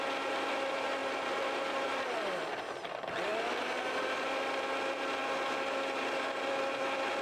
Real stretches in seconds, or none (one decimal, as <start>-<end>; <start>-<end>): 0.0-1.0; 2.4-7.2